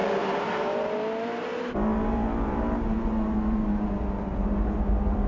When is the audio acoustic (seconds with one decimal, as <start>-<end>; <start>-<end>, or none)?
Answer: 0.9-1.5; 4.7-5.3